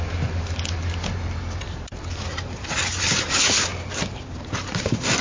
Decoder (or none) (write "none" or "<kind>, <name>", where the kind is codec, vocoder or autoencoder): none